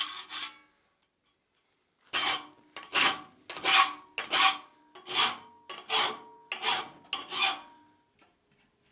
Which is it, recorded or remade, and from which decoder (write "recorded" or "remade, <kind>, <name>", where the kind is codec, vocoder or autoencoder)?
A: recorded